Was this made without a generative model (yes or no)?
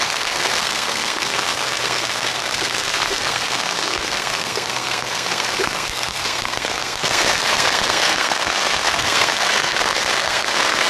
no